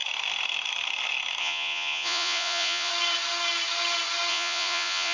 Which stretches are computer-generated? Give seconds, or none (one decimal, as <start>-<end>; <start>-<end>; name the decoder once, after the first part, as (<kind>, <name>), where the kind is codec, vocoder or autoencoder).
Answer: 1.4-2.9 (vocoder, Vocos); 4.3-5.1

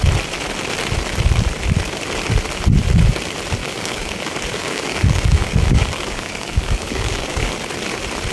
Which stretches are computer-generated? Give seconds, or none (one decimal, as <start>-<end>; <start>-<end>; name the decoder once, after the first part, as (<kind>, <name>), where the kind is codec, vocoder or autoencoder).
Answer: 3.6-7.5 (codec, DAC)